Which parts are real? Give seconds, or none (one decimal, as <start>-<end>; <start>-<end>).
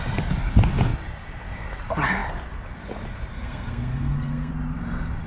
0.0-3.3; 4.5-5.3